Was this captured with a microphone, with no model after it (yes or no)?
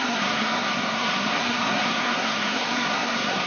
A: no